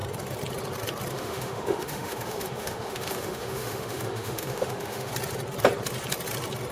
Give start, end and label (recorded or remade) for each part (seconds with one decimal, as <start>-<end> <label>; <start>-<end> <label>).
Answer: 0.0-1.1 recorded; 1.1-5.1 remade; 5.1-6.7 recorded